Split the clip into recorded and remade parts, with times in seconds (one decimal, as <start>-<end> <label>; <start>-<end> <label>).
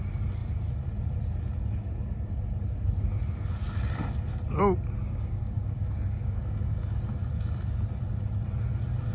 0.0-5.0 recorded; 5.0-7.2 remade; 7.2-9.1 recorded